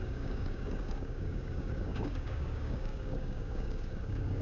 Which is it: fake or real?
fake